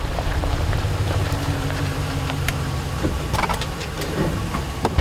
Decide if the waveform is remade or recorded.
remade